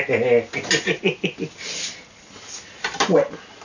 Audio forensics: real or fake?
real